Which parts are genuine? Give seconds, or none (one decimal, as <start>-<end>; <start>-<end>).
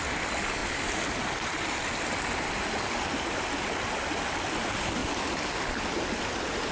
0.0-6.7